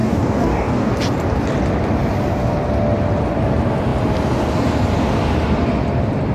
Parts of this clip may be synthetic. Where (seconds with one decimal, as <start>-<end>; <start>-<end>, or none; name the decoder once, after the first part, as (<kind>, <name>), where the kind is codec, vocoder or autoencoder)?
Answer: 0.0-0.9 (codec, DAC)